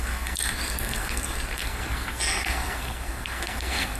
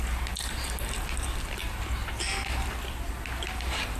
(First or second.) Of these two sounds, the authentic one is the second